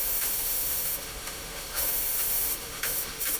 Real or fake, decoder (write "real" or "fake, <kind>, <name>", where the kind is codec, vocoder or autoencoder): fake, autoencoder, DAC-VAE